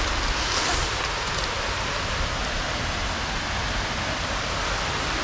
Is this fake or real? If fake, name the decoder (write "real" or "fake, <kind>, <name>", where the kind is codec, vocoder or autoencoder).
real